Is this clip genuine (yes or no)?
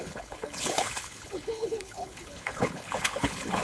no